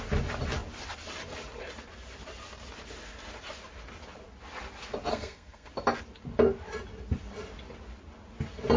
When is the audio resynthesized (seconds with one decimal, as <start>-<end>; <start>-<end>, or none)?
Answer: 5.1-5.7